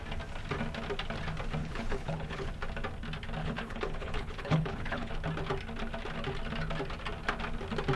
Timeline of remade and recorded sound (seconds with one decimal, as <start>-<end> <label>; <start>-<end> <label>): 0.0-1.6 recorded; 1.6-2.5 remade; 2.5-3.4 recorded; 3.4-5.1 remade; 5.1-8.0 recorded